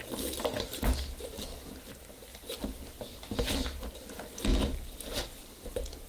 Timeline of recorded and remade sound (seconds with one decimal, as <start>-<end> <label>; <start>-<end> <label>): 0.0-6.1 recorded